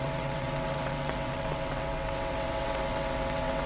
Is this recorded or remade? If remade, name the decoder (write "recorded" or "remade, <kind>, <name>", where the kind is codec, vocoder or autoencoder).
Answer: remade, vocoder, WaveNeXt